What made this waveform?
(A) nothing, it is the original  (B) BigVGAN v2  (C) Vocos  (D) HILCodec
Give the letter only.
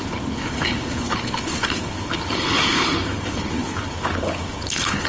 D